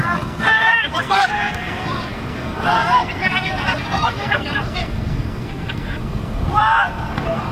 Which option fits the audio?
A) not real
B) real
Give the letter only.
A